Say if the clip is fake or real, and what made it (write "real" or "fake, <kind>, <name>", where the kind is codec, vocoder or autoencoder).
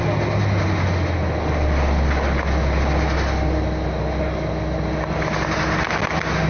real